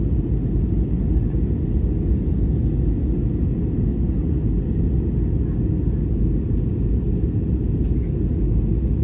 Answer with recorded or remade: recorded